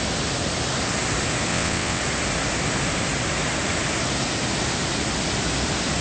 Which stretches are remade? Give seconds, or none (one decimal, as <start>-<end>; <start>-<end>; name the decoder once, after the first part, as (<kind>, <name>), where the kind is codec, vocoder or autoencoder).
1.5-2.0 (vocoder, WaveNeXt)